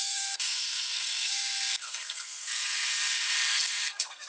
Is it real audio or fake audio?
fake